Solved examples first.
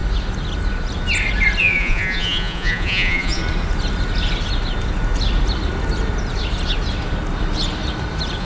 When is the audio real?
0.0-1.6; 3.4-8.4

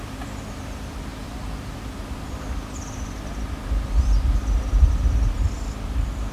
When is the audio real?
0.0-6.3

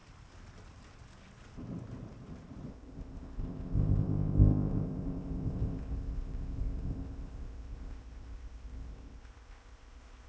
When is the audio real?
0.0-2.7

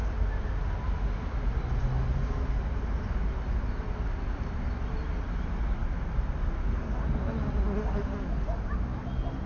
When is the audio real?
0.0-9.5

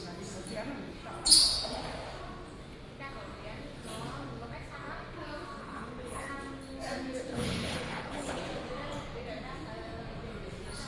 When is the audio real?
0.0-5.6; 6.3-7.3; 8.4-10.9

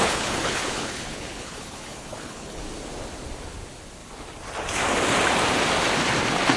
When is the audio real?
2.6-6.6